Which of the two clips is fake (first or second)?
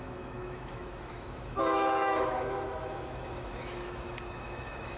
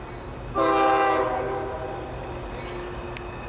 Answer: first